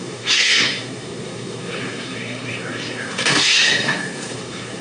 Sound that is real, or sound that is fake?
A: fake